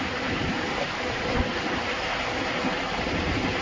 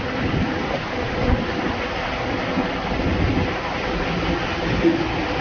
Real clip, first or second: second